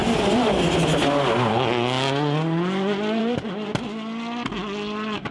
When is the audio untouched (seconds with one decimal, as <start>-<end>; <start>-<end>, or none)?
0.0-5.3